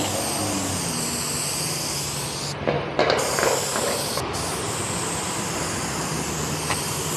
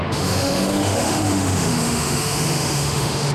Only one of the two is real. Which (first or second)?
first